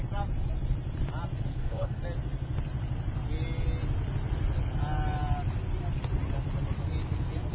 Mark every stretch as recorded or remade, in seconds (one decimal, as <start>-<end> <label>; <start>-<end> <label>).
0.0-1.5 recorded; 1.5-2.0 remade; 2.0-7.5 recorded